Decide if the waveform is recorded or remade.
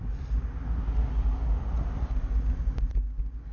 recorded